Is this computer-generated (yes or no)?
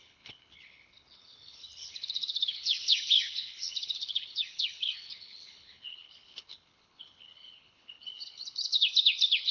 yes